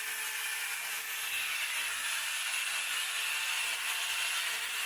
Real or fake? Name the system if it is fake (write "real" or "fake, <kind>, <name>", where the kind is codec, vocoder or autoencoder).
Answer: real